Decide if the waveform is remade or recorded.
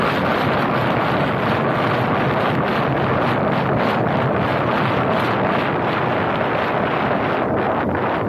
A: recorded